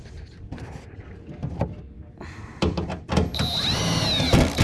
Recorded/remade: recorded